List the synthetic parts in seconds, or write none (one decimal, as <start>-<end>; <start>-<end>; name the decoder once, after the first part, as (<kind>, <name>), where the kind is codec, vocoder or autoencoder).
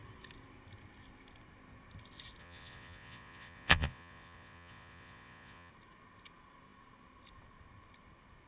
2.4-5.7 (vocoder, Vocos)